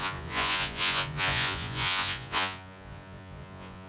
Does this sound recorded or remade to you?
remade